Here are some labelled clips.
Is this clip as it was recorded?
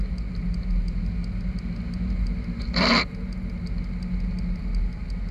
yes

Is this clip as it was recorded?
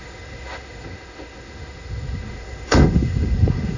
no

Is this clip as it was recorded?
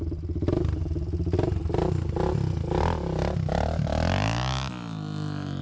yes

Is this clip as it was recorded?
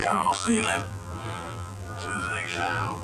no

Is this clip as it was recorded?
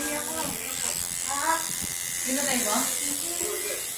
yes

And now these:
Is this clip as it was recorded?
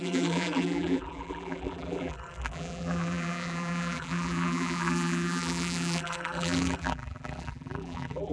no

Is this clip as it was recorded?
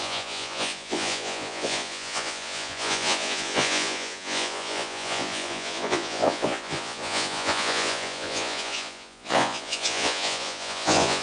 no